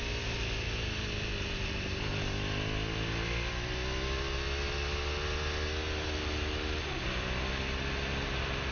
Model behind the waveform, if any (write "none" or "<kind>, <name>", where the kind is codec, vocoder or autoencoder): none